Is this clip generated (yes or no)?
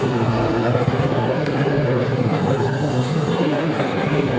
yes